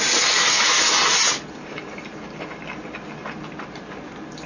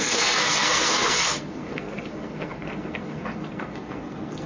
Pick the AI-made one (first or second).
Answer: second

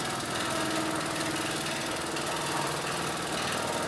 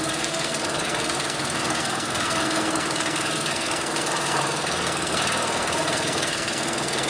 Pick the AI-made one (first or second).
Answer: second